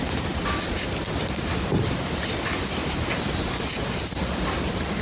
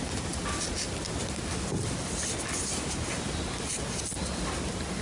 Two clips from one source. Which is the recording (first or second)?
second